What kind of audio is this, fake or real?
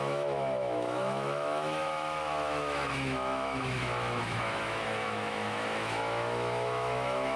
fake